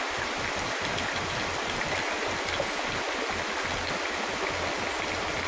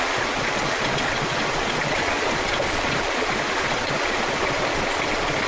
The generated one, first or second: second